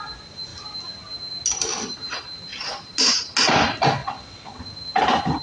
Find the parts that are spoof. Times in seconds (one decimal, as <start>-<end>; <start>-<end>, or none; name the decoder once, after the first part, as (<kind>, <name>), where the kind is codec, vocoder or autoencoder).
4.0-4.6 (vocoder, WaveNeXt)